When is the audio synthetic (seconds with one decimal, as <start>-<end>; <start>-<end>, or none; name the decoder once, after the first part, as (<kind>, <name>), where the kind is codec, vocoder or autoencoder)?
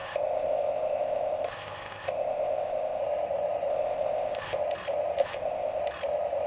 0.0-3.0 (codec, ZipCodec); 3.7-4.6; 5.2-5.8